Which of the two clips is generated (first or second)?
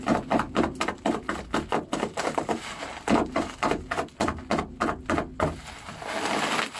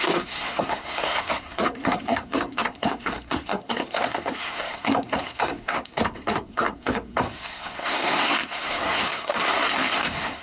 second